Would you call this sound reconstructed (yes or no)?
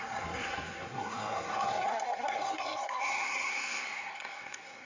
yes